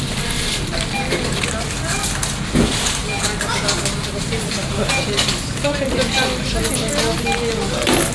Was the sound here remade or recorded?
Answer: recorded